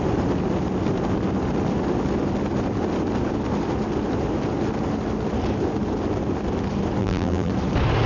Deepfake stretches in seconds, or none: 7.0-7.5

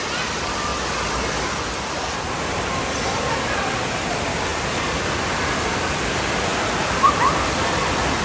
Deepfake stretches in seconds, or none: 0.0-0.7; 1.5-4.5; 5.1-8.2

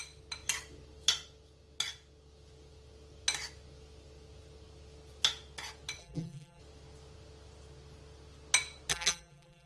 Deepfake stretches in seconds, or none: 6.0-6.6; 8.9-9.7

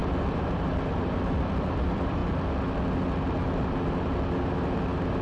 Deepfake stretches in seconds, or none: 0.0-2.2